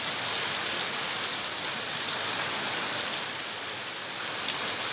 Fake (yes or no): no